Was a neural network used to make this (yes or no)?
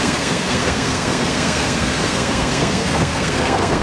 yes